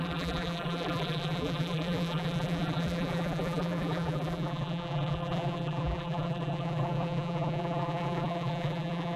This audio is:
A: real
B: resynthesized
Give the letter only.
B